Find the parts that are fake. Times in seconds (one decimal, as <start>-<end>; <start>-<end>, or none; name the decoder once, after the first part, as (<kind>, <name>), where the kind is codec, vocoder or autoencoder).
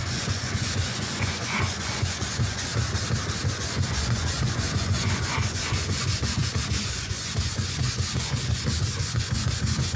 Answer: 0.0-2.7 (vocoder, Vocos); 3.5-10.0